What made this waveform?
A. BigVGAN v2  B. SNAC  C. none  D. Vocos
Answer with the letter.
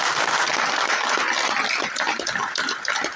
C